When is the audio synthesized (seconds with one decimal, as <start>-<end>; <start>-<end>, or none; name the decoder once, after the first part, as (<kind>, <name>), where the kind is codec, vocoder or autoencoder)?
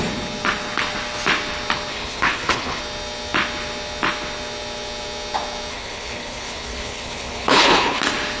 1.9-2.8 (codec, HILCodec); 5.7-8.0